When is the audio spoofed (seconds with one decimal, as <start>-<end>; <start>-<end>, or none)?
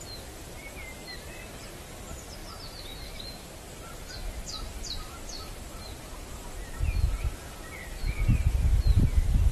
2.4-6.3